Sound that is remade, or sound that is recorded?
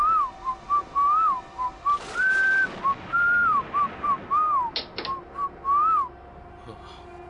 recorded